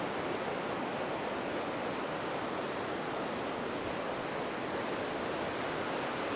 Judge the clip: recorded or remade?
recorded